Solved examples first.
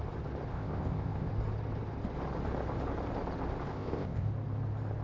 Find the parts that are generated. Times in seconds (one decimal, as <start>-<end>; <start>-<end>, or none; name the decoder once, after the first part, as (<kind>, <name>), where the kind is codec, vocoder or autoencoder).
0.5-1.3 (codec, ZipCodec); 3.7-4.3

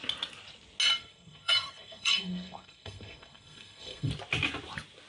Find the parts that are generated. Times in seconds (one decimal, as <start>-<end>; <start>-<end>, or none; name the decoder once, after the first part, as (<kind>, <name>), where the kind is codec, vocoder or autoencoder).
1.0-4.1 (codec, SNAC)

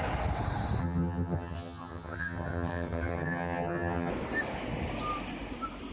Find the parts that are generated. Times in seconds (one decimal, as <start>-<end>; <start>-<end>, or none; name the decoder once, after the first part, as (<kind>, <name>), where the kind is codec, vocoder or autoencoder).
0.8-4.1 (vocoder, HiFi-GAN)